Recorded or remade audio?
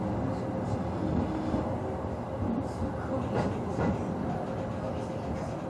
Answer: recorded